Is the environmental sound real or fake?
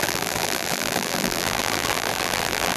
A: fake